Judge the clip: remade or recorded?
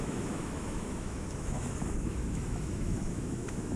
remade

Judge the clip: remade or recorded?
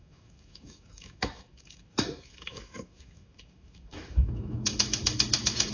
remade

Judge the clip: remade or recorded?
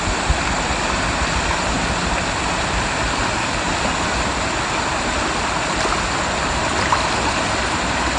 recorded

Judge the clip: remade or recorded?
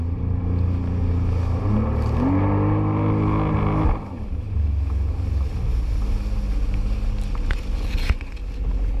recorded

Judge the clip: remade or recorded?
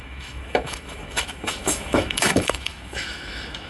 remade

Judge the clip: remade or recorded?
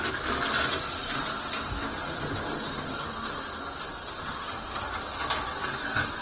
recorded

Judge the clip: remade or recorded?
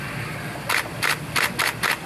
recorded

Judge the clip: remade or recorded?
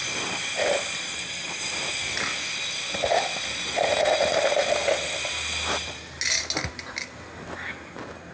recorded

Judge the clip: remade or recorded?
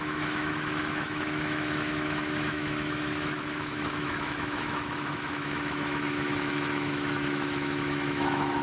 remade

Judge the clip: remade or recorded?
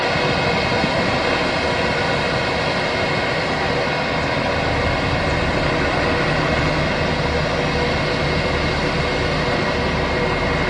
recorded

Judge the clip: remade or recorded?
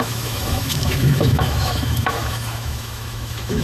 remade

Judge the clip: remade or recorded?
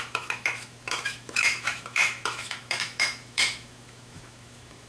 remade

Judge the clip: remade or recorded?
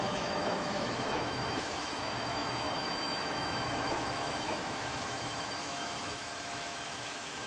remade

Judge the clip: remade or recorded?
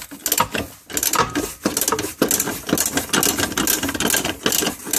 recorded